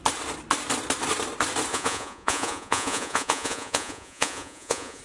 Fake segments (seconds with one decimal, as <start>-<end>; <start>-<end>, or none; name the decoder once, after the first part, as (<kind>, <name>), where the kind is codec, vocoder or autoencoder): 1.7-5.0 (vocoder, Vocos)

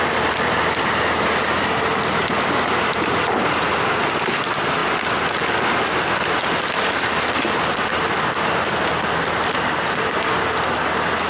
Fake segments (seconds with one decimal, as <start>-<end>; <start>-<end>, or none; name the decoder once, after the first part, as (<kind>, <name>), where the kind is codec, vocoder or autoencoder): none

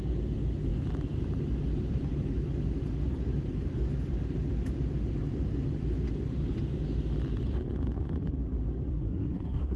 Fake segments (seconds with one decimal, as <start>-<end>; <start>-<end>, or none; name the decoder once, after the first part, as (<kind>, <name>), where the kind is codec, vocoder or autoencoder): 8.9-9.8 (codec, SNAC)

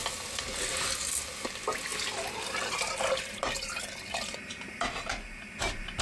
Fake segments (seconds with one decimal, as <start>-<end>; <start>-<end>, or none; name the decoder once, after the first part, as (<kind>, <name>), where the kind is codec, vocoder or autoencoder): none

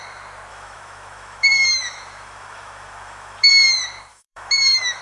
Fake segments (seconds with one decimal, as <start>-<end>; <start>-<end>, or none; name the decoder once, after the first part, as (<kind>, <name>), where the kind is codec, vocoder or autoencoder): 0.5-3.5 (autoencoder, DAC-VAE); 4.1-5.0